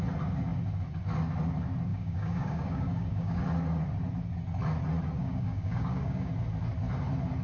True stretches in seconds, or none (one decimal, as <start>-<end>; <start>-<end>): 0.0-1.9; 3.4-5.2; 6.3-7.4